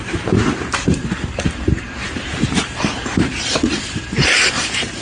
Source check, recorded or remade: remade